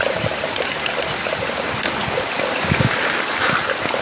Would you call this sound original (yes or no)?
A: yes